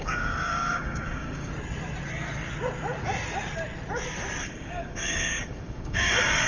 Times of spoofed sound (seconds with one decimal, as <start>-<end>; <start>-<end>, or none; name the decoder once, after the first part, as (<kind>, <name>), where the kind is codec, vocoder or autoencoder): 0.0-1.5 (codec, DAC); 4.4-6.5

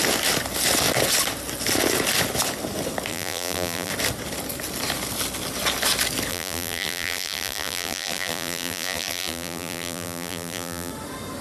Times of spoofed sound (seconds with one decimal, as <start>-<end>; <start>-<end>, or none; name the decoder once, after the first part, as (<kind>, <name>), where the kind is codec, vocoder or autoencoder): 3.1-3.9 (vocoder, BigVGAN v2); 6.3-10.9